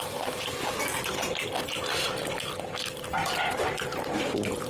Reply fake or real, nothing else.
real